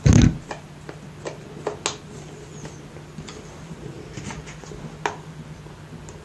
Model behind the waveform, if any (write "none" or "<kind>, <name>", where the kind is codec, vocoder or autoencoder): none